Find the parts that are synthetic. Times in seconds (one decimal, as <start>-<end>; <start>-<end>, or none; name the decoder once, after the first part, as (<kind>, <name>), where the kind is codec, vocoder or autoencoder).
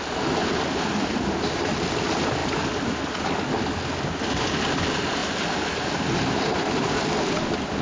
none